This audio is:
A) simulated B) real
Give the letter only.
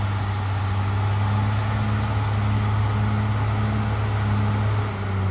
B